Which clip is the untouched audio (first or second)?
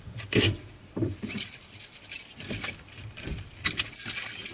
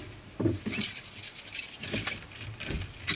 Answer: second